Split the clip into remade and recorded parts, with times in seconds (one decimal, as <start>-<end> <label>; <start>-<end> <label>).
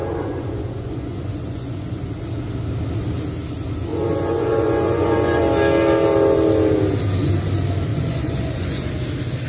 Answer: 0.0-2.1 remade; 2.1-3.9 recorded; 3.9-5.4 remade; 5.4-7.9 recorded; 7.9-8.9 remade; 8.9-9.5 recorded